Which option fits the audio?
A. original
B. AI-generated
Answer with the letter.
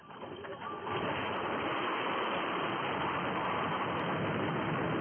B